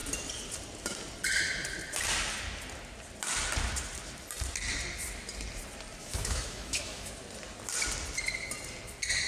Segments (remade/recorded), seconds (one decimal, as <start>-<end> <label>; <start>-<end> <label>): 0.0-6.0 recorded; 6.0-7.1 remade; 7.1-9.3 recorded